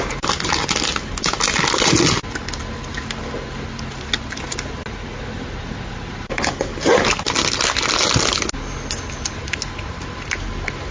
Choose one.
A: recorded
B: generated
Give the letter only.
A